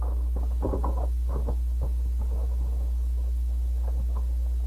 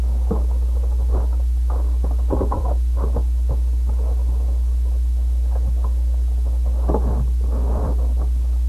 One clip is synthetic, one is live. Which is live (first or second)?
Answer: first